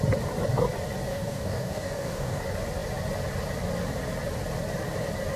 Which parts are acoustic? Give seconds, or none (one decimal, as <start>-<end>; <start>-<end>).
0.0-1.1; 2.4-5.4